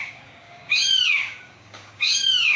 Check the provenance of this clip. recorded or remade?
remade